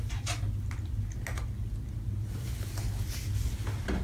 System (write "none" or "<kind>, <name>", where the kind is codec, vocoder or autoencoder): none